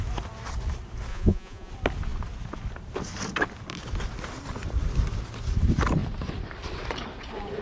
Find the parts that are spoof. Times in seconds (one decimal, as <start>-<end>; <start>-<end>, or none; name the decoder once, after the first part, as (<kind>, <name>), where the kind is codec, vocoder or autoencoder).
1.1-1.7 (vocoder, Vocos)